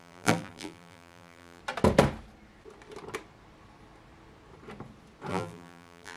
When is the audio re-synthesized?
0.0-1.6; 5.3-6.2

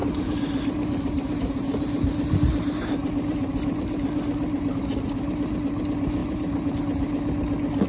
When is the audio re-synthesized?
0.0-4.7; 6.2-6.8

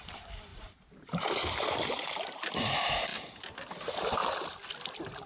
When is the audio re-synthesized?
0.0-4.2

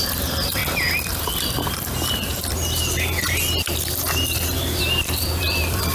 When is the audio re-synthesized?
0.0-0.6; 1.1-2.3; 4.8-5.9

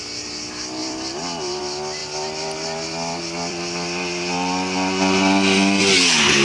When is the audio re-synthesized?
0.8-1.6; 2.0-5.8

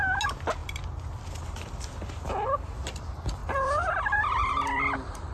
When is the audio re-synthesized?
3.4-5.3